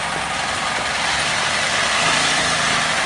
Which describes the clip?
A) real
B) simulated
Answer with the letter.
B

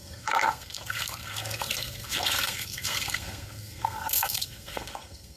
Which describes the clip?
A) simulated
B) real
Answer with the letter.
A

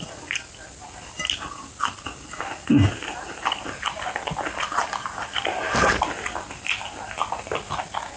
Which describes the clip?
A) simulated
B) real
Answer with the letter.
B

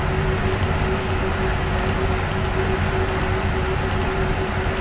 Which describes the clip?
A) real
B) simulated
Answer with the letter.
A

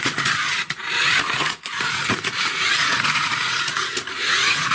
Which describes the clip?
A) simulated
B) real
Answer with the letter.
A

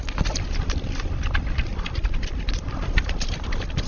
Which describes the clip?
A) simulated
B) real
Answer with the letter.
B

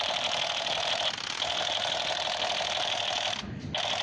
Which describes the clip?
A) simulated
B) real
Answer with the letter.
B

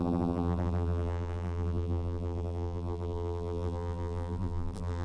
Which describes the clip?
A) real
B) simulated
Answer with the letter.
B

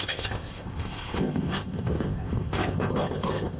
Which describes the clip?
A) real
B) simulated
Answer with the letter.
B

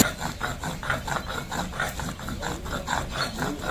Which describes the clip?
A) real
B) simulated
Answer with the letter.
A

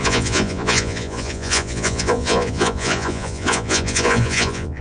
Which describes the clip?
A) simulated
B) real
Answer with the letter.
A